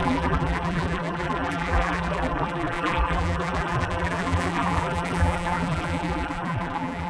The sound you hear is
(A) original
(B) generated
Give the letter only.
B